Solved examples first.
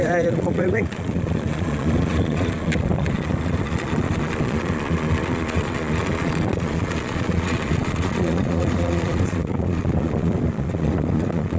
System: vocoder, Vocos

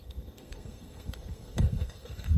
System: codec, SNAC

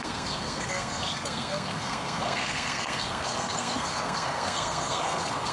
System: codec, SNAC